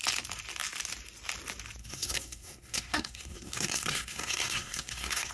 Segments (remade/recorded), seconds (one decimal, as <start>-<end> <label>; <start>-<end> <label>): 0.0-1.8 recorded; 1.8-5.3 remade